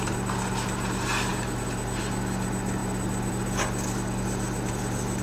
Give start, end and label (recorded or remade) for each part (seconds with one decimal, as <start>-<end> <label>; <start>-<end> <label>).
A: 0.0-5.2 recorded